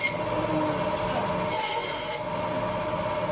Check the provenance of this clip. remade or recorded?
recorded